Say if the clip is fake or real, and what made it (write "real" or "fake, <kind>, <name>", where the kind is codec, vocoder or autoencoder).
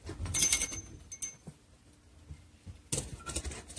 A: real